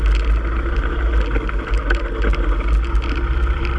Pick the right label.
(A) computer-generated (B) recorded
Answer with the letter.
B